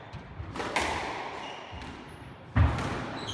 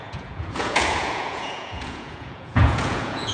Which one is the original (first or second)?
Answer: first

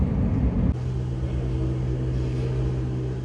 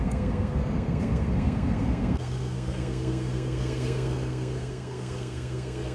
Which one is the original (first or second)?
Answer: first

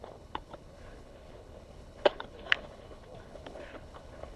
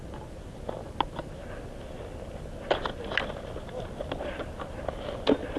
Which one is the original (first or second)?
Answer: second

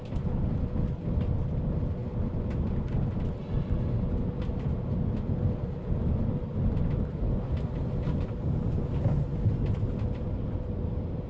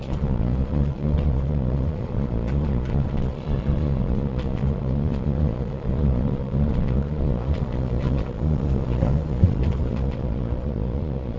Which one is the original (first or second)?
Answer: first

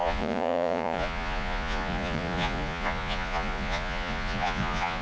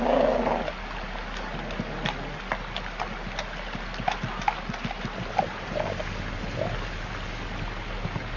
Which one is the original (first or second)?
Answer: second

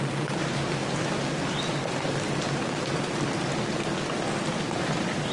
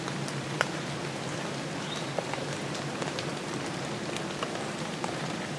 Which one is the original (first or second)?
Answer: first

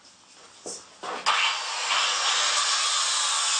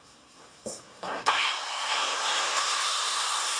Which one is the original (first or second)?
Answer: first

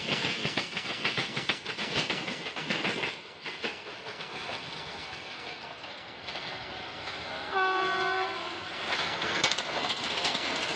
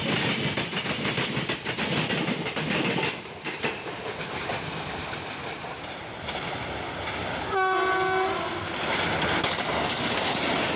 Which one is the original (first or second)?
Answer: second